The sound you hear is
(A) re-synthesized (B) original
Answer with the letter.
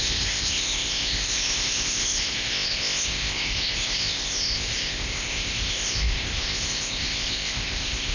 A